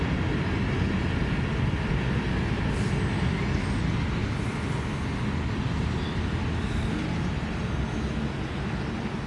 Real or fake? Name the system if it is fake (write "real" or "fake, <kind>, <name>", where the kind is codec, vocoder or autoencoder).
real